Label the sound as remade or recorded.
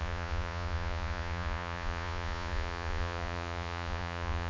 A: remade